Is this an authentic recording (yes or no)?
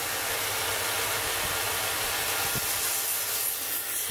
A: yes